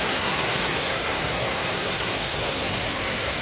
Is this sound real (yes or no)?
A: no